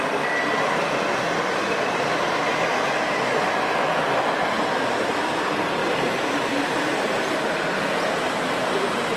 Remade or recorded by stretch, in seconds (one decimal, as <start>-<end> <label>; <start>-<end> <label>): 0.0-5.8 recorded; 5.8-7.2 remade; 7.2-9.2 recorded